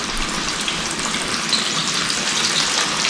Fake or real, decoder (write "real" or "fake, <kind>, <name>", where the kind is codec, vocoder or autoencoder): real